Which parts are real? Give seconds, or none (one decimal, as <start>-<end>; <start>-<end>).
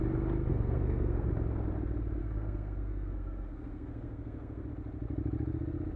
0.0-0.5; 1.3-2.2; 4.7-6.0